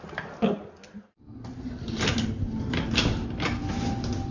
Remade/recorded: recorded